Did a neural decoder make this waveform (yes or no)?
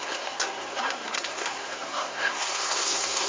yes